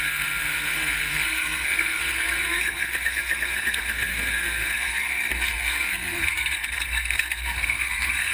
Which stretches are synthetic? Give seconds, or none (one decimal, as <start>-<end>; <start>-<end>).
0.0-8.3